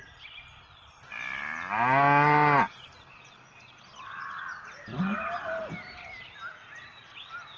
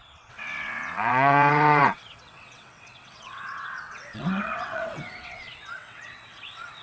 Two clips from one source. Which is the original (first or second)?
first